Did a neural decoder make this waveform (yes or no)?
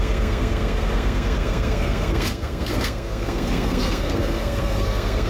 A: yes